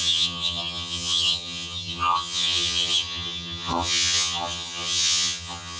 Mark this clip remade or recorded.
remade